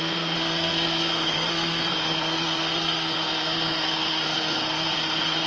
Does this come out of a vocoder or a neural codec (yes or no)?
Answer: yes